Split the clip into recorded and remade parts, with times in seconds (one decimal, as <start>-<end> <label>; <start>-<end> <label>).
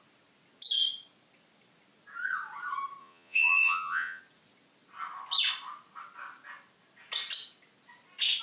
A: 0.0-3.0 recorded; 3.0-4.2 remade; 4.2-8.4 recorded